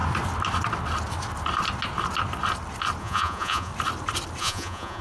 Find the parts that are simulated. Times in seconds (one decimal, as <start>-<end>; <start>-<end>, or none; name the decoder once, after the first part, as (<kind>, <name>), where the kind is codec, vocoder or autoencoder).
3.0-3.7 (vocoder, Vocos); 4.4-5.0